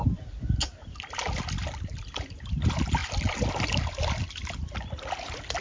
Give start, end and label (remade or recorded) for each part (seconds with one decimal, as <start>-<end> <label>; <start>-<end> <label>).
0.0-5.6 recorded